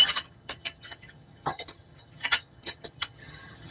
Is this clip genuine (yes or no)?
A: no